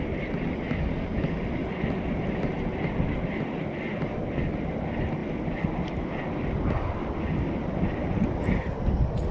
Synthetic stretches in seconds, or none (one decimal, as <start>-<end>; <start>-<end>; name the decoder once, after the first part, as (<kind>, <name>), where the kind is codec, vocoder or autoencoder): none